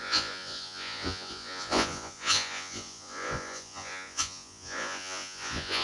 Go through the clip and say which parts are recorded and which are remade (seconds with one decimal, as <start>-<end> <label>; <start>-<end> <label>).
0.0-5.8 remade